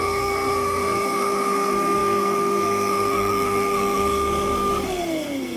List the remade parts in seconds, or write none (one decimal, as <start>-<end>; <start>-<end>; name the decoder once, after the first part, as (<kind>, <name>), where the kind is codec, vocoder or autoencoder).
0.0-5.6 (codec, SNAC)